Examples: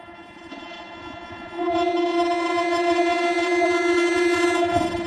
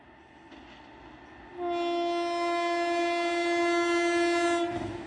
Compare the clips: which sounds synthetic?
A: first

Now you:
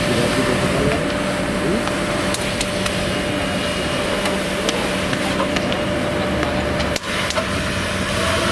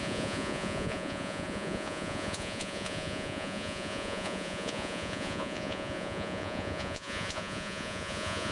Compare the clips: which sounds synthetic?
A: second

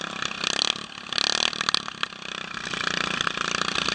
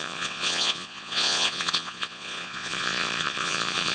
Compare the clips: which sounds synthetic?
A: second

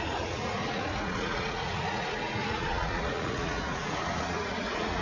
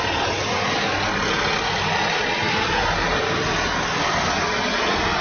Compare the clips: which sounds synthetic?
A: first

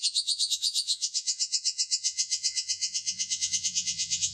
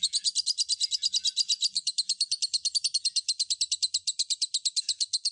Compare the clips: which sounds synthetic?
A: first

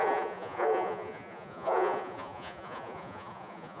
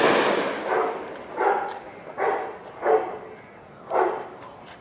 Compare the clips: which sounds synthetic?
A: first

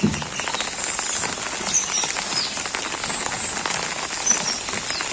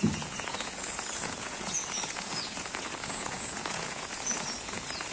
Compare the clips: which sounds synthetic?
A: second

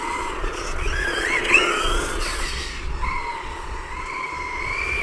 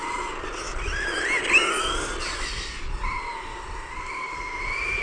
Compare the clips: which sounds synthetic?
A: first